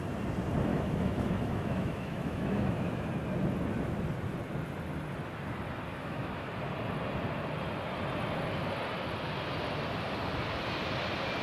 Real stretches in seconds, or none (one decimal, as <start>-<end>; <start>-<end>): 0.0-0.7; 3.1-5.9; 6.5-11.4